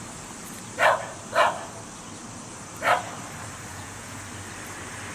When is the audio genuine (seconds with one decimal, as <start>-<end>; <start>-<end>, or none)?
0.0-3.7; 4.2-5.1